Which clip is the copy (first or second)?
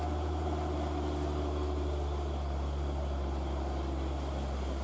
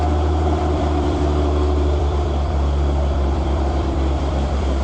second